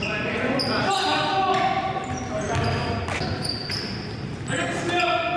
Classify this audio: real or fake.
real